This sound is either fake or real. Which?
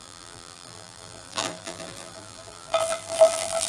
fake